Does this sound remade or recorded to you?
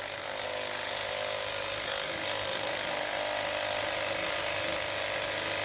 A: recorded